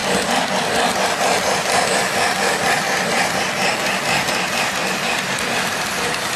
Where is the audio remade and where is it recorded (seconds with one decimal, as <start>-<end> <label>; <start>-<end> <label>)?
0.0-0.9 remade; 0.9-4.8 recorded; 4.8-5.9 remade; 5.9-6.4 recorded